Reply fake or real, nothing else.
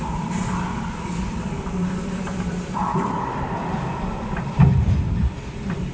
fake